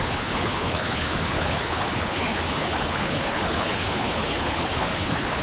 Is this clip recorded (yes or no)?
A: no